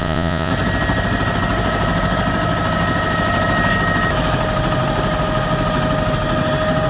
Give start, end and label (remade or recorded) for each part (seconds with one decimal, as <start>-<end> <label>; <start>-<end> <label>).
0.0-0.5 remade; 0.5-6.9 recorded

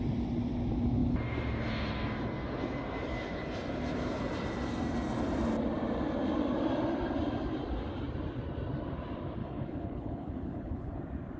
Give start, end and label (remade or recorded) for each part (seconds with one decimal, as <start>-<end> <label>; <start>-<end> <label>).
0.0-9.4 recorded; 9.4-11.0 remade; 11.0-11.4 recorded

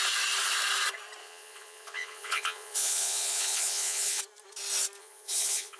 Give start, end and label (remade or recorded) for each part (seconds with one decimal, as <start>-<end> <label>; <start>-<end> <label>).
0.0-1.2 recorded; 1.2-4.2 remade; 4.2-5.0 recorded; 5.0-5.8 remade

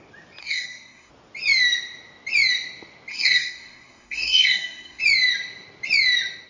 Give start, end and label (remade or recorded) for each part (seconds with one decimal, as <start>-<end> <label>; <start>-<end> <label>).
0.0-0.4 recorded; 0.4-1.1 remade; 1.1-3.1 recorded; 3.1-5.0 remade; 5.0-6.5 recorded

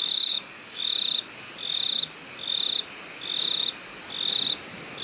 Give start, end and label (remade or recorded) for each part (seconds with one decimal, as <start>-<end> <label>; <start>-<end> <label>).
0.0-0.8 remade; 0.8-5.0 recorded

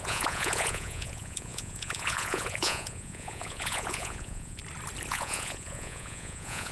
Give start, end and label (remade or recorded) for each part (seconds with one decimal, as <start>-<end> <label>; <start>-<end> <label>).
0.0-4.6 remade; 4.6-5.1 recorded; 5.1-6.7 remade

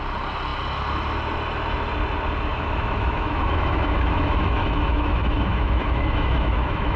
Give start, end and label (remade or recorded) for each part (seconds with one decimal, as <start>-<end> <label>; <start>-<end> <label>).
0.0-2.5 recorded; 2.5-7.0 remade

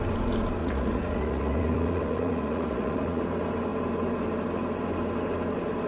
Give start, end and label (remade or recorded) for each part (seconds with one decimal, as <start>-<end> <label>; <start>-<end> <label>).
0.0-0.6 recorded; 0.6-3.2 remade; 3.2-5.9 recorded